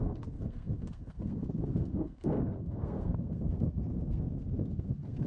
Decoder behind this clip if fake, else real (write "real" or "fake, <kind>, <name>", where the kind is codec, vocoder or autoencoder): fake, codec, SNAC